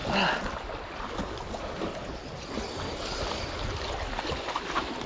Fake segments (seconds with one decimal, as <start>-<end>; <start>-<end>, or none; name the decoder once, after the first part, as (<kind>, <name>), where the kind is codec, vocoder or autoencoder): none